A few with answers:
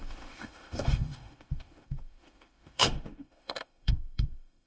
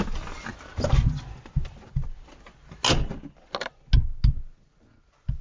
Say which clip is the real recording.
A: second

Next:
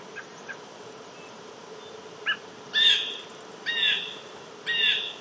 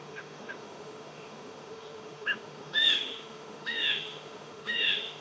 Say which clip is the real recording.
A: first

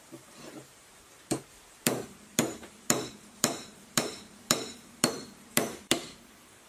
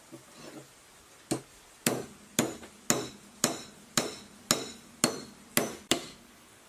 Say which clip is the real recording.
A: second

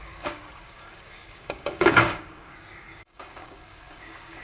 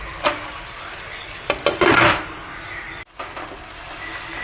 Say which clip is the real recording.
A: second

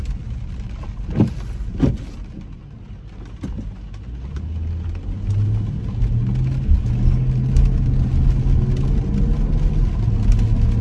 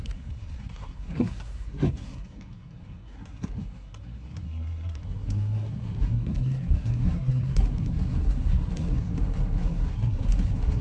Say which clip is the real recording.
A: first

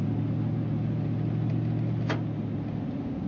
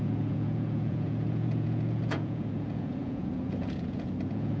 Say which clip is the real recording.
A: first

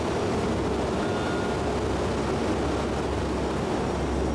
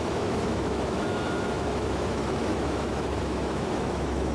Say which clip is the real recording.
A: first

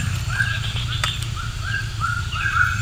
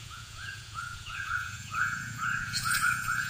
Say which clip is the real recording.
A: first